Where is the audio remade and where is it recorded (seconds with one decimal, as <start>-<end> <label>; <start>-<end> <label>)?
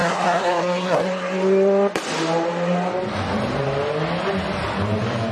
0.0-1.0 remade; 1.0-5.3 recorded